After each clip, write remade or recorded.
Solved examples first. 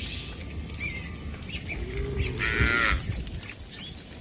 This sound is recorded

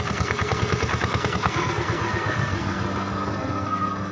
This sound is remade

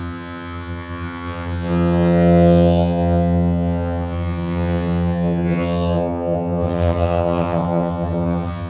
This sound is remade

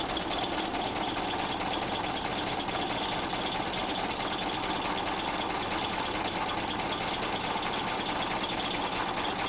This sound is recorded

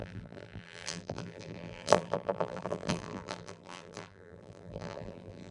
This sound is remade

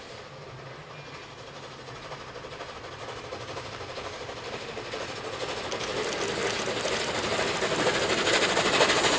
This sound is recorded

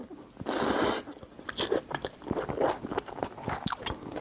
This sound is recorded